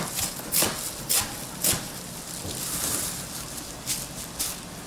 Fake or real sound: real